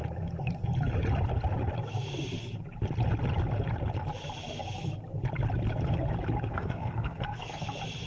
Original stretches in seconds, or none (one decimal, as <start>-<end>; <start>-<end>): 0.0-6.5; 7.6-8.1